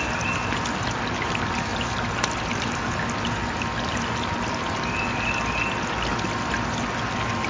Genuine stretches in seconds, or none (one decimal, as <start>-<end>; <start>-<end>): 0.0-7.5